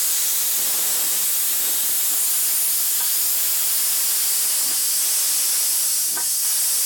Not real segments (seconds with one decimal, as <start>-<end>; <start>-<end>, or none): none